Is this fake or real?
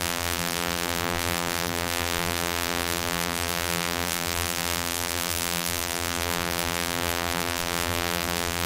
fake